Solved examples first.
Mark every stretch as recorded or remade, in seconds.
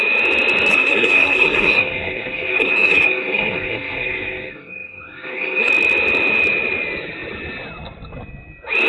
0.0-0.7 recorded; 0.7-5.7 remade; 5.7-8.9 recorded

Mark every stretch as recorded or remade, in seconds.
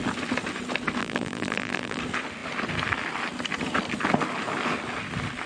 0.0-1.0 recorded; 1.0-2.0 remade; 2.0-5.5 recorded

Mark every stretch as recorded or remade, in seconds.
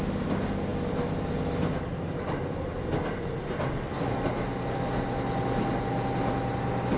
0.0-7.0 recorded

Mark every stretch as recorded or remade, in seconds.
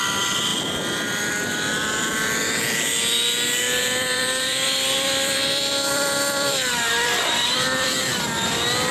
0.0-3.8 recorded; 3.8-8.0 remade; 8.0-8.9 recorded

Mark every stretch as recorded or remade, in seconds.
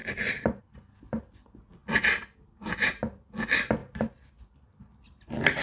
0.0-5.6 recorded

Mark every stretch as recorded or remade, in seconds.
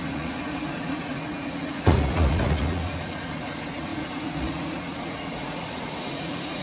0.0-6.6 remade